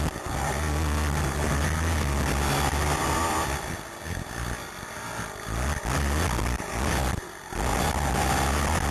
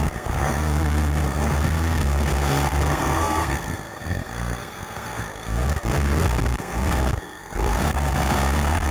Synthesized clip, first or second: second